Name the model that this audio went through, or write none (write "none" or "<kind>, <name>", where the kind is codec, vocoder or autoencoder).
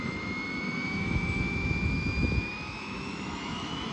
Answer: autoencoder, DAC-VAE